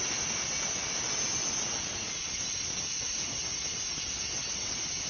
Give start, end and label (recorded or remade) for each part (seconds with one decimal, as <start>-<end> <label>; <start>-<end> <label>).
0.0-5.1 recorded